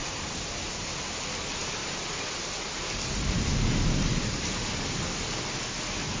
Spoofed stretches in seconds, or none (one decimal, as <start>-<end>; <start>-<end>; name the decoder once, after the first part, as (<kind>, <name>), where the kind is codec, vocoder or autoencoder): none